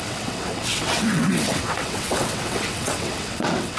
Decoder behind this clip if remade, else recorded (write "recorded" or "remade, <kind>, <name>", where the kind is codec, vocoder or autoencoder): remade, vocoder, WaveNeXt